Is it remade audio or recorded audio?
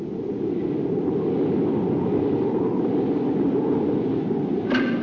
recorded